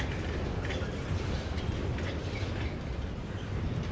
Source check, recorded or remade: recorded